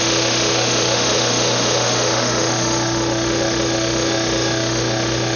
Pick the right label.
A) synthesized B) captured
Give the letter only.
A